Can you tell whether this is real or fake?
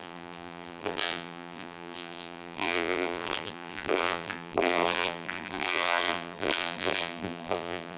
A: fake